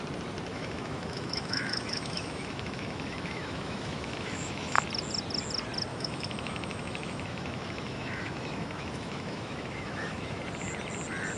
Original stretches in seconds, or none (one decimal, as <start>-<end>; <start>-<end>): 0.0-0.5; 4.8-5.9; 10.4-11.4